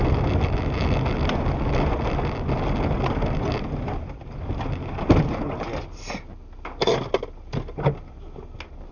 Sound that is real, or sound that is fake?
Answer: real